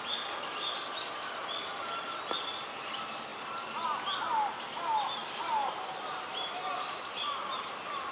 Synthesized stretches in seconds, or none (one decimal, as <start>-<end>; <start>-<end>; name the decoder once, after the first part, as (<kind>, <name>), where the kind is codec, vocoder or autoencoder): 5.2-7.6 (vocoder, BigVGAN v2)